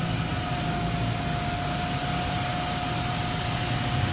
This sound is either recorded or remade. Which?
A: recorded